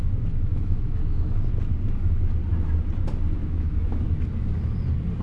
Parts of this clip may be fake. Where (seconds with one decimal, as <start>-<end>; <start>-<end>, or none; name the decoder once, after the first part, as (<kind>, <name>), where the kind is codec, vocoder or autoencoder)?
0.5-1.5 (autoencoder, DAC-VAE); 3.4-4.0